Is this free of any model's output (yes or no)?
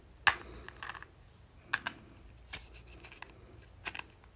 yes